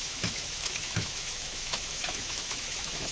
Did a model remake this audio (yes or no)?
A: yes